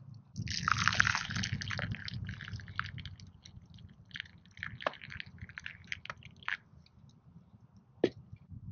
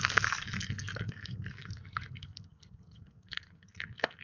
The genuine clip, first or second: first